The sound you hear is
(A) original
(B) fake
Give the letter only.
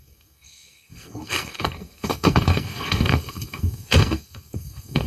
B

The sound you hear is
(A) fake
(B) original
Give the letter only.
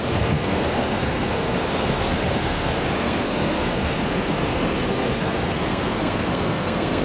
A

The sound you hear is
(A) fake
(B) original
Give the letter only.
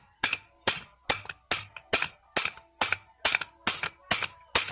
B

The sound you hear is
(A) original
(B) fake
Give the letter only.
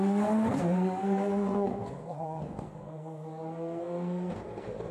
B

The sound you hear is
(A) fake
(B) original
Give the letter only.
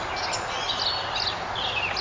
B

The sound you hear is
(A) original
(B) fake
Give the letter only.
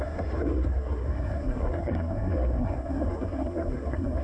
B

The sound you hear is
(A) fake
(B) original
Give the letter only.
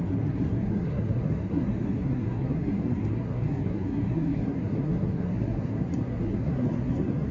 A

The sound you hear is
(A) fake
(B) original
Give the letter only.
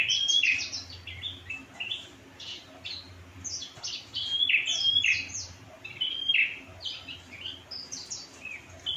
B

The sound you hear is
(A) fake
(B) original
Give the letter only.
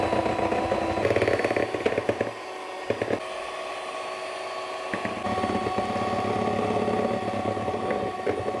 B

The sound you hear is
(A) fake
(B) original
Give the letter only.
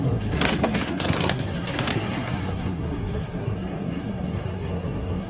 A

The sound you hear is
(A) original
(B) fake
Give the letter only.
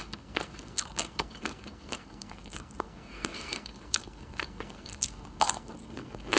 B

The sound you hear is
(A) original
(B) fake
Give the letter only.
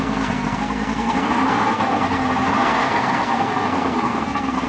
B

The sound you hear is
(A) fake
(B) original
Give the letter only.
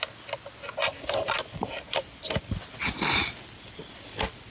B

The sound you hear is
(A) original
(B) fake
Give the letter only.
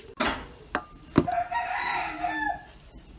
A